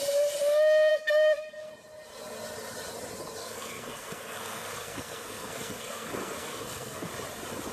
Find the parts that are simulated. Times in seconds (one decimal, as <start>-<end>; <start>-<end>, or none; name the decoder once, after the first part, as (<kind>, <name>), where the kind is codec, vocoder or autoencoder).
0.9-1.7 (codec, SNAC); 3.4-7.1